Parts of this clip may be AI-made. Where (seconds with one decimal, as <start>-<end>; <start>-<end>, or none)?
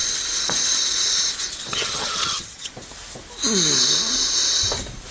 1.7-2.7